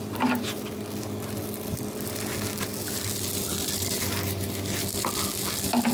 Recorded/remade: recorded